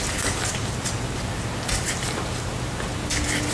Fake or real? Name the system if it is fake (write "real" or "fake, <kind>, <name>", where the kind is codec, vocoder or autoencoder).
real